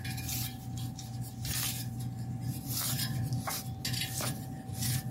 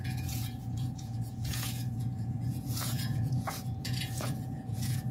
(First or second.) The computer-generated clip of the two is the second